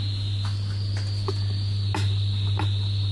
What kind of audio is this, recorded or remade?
recorded